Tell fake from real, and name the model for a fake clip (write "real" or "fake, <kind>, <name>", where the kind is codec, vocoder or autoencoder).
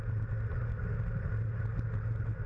real